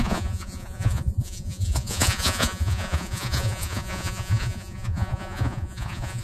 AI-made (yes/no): yes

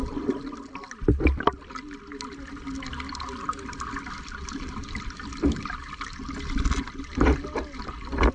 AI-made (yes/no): no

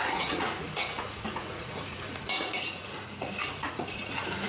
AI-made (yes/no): yes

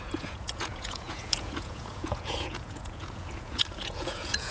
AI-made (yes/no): yes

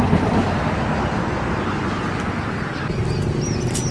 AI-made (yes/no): no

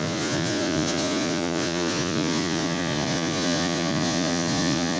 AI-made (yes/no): yes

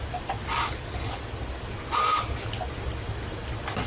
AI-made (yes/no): no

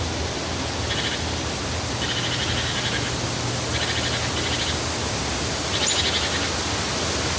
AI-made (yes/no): no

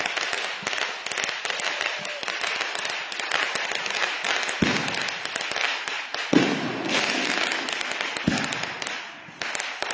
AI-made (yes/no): no